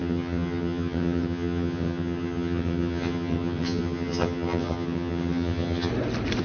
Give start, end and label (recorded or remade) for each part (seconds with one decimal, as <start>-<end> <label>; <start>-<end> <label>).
0.0-5.9 remade; 5.9-6.4 recorded